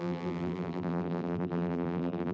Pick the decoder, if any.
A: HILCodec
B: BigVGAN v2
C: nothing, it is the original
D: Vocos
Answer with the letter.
B